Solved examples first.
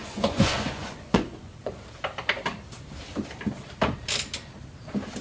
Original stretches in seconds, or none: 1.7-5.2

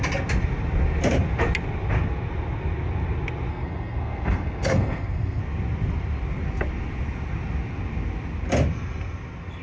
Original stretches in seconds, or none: 0.0-3.5; 5.4-9.6